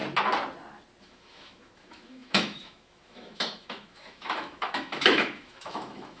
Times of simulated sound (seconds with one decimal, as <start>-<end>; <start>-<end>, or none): 1.0-6.2